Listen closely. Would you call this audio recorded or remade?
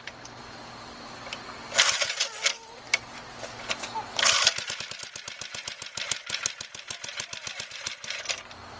recorded